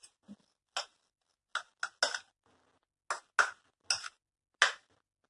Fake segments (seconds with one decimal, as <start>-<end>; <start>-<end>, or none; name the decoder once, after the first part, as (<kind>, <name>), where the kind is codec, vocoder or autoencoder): none